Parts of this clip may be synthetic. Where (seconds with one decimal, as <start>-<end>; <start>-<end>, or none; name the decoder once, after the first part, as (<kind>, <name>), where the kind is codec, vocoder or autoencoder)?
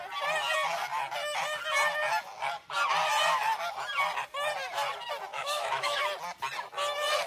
5.3-6.0 (autoencoder, DAC-VAE)